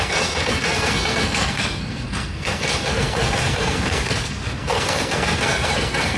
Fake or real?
fake